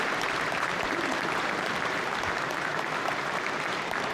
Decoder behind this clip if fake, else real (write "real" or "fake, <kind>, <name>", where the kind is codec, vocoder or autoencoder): fake, vocoder, BigVGAN v2